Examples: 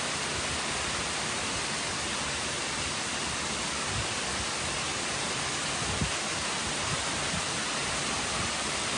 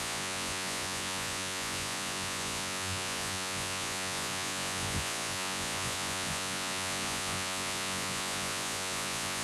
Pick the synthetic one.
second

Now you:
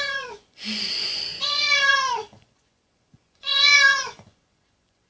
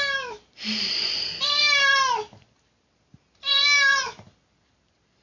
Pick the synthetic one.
first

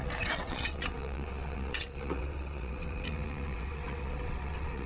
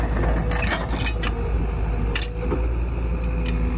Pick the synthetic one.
first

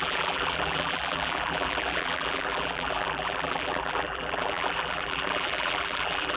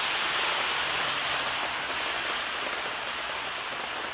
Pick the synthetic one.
first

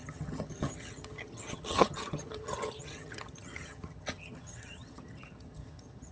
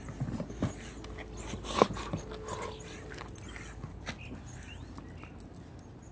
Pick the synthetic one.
first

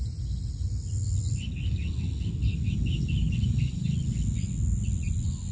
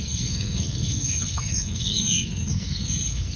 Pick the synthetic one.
second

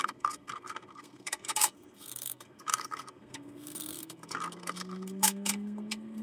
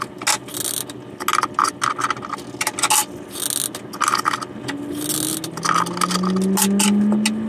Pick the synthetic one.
first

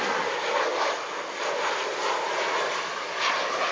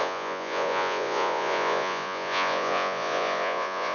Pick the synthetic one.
second